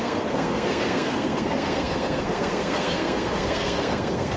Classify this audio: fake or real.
fake